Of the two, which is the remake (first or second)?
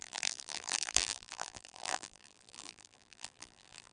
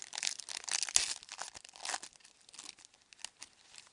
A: first